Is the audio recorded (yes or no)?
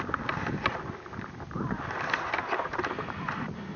yes